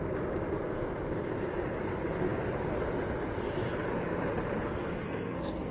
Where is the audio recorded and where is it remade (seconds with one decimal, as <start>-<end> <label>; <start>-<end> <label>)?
0.0-5.0 recorded; 5.0-5.7 remade